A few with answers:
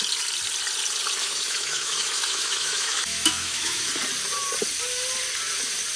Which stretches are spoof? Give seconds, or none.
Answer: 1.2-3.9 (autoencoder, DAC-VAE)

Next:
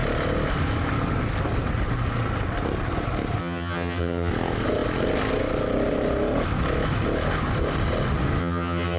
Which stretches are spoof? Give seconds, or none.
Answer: 3.4-4.3 (vocoder, HiFi-GAN); 8.4-9.0

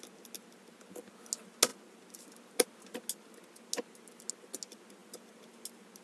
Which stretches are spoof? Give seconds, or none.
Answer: none